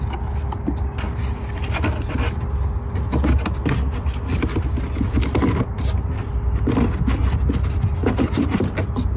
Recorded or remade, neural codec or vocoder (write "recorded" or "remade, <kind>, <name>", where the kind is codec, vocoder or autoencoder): recorded